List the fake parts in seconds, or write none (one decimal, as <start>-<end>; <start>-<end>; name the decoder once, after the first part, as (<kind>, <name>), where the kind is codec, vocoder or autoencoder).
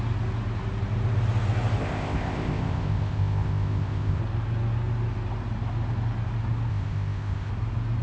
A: 1.8-4.2 (codec, ZipCodec); 6.7-7.5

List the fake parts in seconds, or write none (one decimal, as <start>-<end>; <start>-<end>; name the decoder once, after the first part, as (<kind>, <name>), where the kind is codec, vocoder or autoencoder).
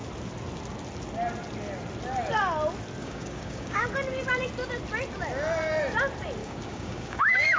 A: 3.0-3.8 (codec, DAC); 6.4-7.6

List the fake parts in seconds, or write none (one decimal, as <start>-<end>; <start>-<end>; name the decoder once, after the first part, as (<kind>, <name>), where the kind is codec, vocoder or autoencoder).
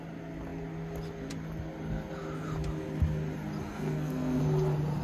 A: 3.7-4.4 (codec, SNAC)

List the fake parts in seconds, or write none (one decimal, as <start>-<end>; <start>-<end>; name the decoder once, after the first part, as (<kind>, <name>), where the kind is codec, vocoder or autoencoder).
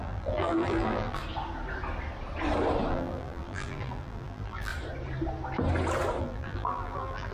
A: 0.0-1.2 (vocoder, BigVGAN v2); 2.9-4.7; 6.2-7.3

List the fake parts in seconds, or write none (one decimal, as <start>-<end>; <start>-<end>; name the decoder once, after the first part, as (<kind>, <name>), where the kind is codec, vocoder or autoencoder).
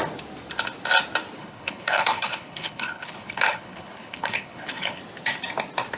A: 1.4-5.0 (codec, HILCodec)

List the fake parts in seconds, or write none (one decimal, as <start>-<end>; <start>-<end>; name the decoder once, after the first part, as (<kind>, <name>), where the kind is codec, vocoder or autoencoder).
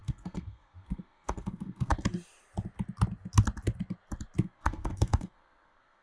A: 0.0-1.9 (codec, SNAC); 4.4-6.0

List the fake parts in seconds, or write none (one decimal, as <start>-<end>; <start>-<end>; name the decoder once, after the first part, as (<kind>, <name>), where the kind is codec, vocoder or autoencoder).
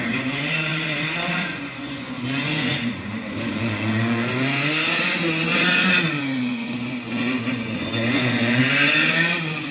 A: 0.0-9.7 (vocoder, Vocos)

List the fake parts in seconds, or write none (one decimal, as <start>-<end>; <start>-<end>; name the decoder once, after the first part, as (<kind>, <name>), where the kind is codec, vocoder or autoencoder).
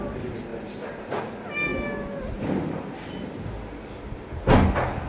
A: none